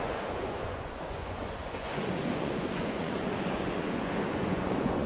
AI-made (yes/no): yes